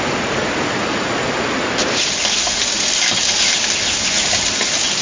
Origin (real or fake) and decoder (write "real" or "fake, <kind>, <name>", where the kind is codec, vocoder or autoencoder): real